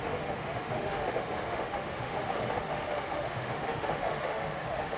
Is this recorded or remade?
remade